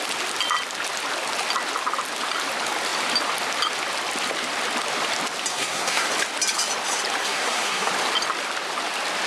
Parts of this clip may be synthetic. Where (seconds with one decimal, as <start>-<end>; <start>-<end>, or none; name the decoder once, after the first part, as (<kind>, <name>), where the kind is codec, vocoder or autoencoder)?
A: 5.5-6.1 (codec, SNAC); 7.2-7.9